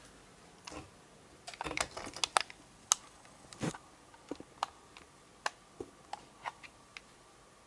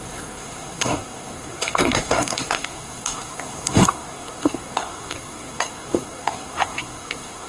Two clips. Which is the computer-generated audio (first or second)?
second